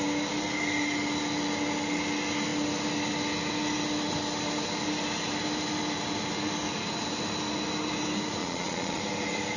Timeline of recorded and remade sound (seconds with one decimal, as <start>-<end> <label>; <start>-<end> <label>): 0.0-8.4 recorded; 8.4-9.0 remade; 9.0-9.6 recorded

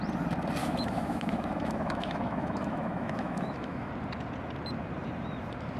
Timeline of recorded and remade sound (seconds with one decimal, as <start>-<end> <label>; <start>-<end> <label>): 0.0-0.6 recorded; 0.6-3.9 remade; 3.9-5.8 recorded